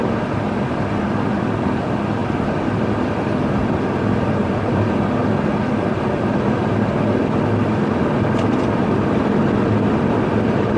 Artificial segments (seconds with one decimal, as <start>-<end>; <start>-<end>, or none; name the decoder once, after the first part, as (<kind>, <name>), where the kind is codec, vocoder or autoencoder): 0.0-5.2 (vocoder, BigVGAN v2); 5.7-10.8

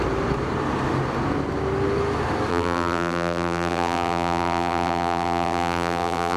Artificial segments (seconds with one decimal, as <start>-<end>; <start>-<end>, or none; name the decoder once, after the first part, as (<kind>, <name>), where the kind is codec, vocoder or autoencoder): 2.5-6.4 (vocoder, BigVGAN v2)